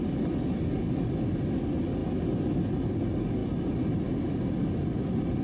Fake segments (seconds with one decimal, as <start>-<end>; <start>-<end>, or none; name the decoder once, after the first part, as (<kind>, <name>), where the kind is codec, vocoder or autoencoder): none